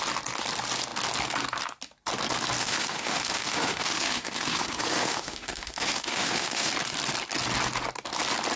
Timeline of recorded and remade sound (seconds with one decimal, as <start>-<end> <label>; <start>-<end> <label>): 0.0-2.6 recorded; 2.6-6.7 remade; 6.7-8.6 recorded